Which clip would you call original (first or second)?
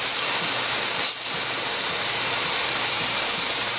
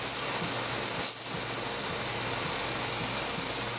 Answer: second